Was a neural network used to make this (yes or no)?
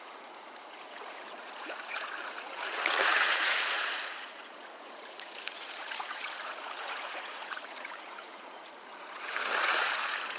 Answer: yes